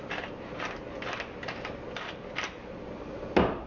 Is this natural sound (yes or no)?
yes